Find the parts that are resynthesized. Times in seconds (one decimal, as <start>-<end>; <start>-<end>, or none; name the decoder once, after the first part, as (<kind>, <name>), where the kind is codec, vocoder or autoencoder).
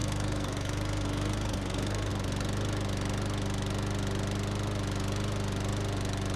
0.0-2.1 (codec, SNAC)